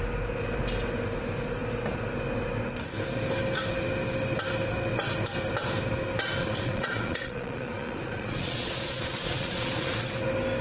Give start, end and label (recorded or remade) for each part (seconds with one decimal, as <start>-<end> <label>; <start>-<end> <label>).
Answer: 0.0-6.4 recorded; 6.4-9.9 remade; 9.9-10.6 recorded